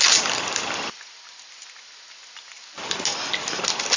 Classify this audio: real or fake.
real